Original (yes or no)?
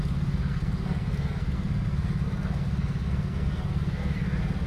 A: no